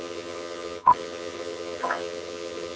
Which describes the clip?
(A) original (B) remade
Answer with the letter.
B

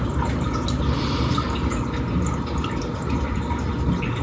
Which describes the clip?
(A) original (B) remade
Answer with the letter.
A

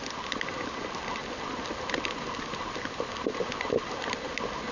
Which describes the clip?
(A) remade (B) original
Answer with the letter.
B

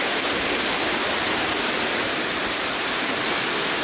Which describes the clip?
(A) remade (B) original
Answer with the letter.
B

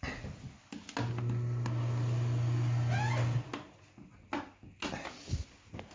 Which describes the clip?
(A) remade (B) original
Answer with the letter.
B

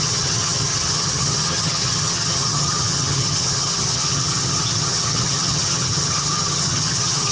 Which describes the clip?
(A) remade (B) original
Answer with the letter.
A